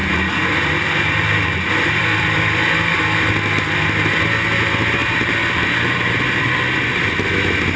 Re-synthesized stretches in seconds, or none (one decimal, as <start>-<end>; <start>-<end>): 0.0-3.0; 5.0-6.9